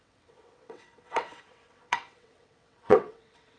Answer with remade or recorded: remade